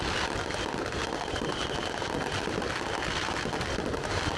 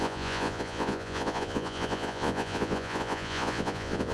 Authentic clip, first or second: first